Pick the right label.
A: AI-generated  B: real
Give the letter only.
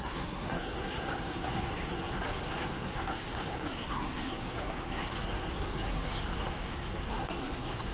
A